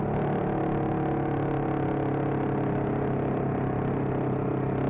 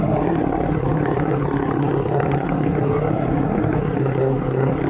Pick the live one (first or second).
first